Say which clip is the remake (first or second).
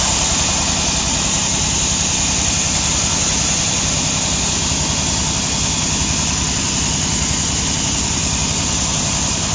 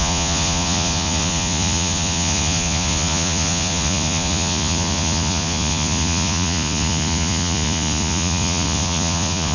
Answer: second